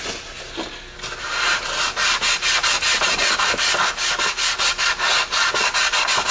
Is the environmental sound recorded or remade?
recorded